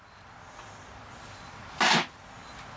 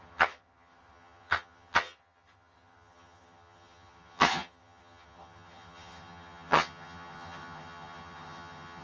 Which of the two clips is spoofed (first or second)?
second